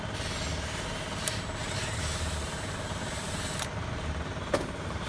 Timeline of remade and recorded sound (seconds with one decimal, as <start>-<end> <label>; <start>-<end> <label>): 0.0-1.6 recorded; 1.6-5.1 remade